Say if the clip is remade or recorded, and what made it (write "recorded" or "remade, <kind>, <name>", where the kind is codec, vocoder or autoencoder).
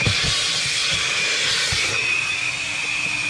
recorded